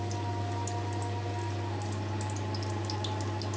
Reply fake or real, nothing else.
real